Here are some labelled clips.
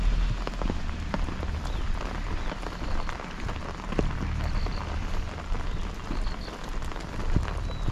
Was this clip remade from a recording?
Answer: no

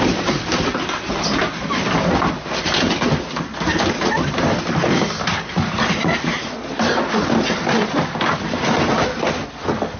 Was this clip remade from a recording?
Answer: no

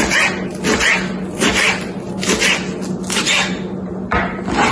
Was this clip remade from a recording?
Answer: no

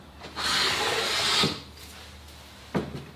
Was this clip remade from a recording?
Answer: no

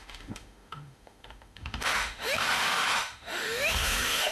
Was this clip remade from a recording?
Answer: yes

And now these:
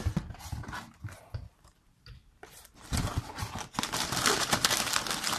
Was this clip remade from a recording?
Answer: no